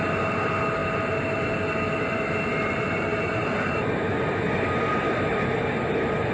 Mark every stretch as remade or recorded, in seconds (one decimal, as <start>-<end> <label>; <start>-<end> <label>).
0.0-6.3 recorded